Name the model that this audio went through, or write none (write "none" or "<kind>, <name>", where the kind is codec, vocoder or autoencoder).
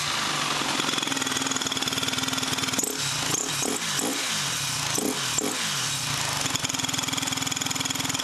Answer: none